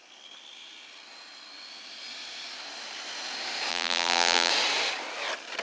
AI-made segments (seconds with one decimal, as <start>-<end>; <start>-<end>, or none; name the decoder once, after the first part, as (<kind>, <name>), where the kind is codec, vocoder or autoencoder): 3.7-4.5 (vocoder, BigVGAN v2)